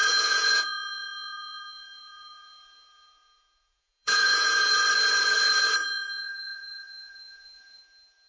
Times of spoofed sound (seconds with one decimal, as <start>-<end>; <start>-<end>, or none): 0.0-4.7; 5.8-7.8